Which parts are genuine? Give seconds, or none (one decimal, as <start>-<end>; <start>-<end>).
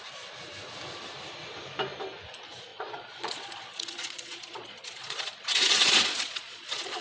0.0-2.7